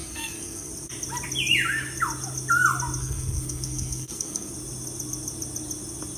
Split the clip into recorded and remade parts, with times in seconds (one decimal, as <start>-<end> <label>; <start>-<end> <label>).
0.0-0.7 remade; 0.7-3.0 recorded; 3.0-4.5 remade; 4.5-6.2 recorded